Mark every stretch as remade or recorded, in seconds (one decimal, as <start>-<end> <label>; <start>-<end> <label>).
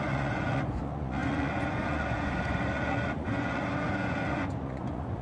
0.0-5.2 remade